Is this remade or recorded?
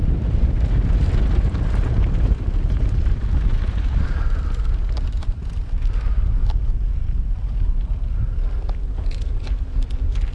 recorded